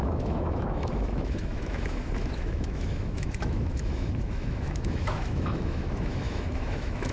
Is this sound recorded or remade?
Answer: remade